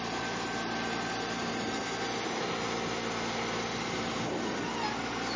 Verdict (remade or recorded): recorded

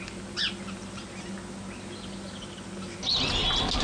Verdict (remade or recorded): recorded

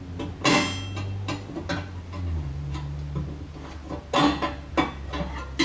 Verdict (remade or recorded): recorded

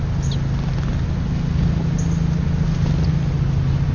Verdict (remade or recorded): recorded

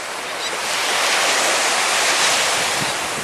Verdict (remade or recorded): recorded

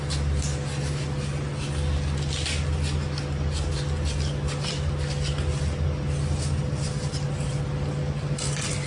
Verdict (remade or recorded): recorded